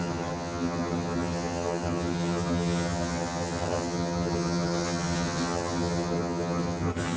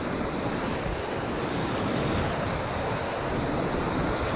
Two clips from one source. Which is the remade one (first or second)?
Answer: first